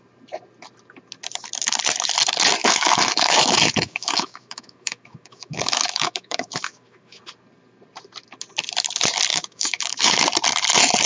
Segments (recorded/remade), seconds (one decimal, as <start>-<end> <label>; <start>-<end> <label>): 0.0-2.6 recorded; 2.6-7.2 remade; 7.2-9.3 recorded; 9.3-10.2 remade; 10.2-11.1 recorded